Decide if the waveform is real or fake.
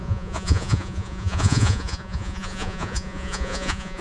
fake